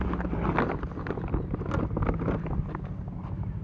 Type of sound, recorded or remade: recorded